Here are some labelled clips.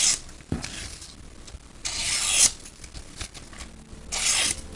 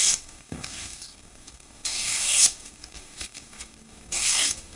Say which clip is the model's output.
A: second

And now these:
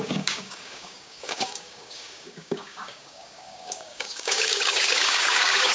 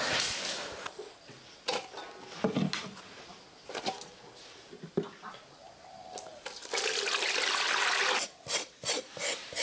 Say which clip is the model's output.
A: first